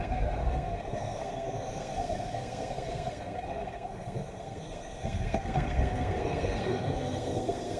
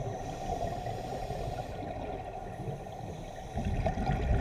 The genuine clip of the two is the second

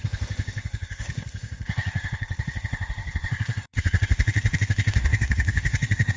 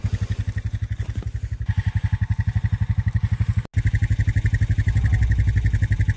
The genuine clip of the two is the second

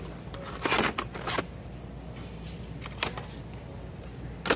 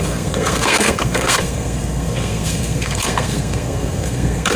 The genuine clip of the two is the first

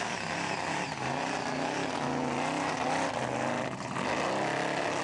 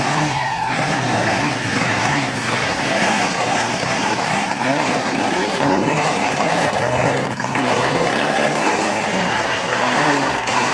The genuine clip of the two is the first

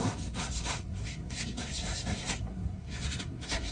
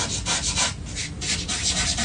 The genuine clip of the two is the second